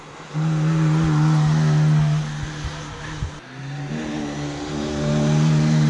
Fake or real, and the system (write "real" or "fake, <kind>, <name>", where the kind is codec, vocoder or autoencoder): real